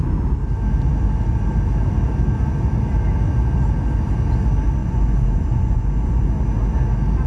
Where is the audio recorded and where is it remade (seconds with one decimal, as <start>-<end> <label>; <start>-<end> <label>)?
0.0-4.8 recorded; 4.8-6.3 remade; 6.3-7.3 recorded